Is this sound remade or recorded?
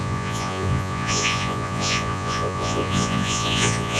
remade